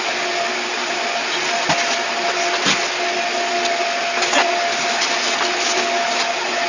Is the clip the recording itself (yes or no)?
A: yes